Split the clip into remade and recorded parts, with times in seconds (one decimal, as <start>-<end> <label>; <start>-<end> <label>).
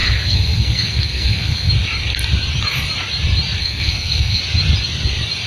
0.0-1.7 remade; 1.7-3.6 recorded; 3.6-4.4 remade; 4.4-5.5 recorded